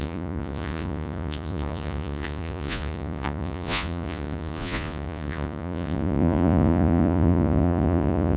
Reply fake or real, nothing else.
fake